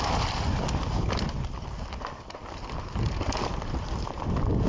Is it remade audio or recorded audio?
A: recorded